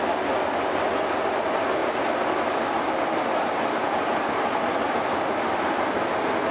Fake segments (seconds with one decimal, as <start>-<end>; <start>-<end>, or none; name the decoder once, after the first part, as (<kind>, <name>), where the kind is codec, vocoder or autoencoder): none